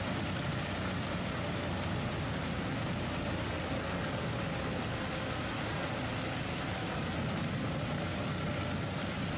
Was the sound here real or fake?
real